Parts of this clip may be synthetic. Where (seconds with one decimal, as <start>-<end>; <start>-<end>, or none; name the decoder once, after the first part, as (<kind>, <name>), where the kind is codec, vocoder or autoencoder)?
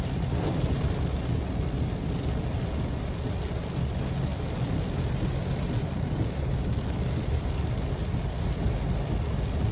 none